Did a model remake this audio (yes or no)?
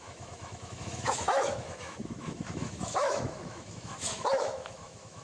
yes